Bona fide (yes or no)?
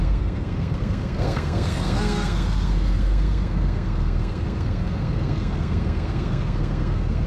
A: no